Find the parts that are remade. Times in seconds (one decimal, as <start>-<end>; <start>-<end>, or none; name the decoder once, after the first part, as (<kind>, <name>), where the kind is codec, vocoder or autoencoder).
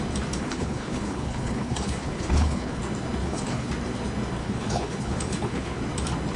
0.4-2.8 (codec, HILCodec); 3.2-3.7; 4.4-5.8